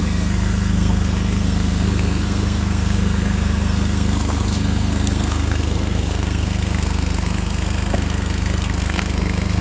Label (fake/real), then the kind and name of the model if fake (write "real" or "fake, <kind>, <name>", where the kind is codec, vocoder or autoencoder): fake, codec, SNAC